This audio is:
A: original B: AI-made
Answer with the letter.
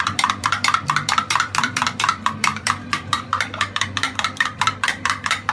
B